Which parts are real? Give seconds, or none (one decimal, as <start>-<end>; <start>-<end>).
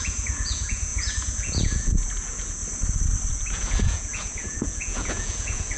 2.6-3.3